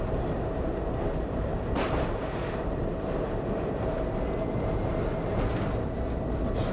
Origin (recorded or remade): recorded